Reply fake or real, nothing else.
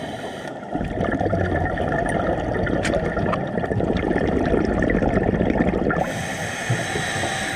real